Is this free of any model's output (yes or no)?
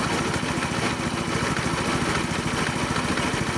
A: yes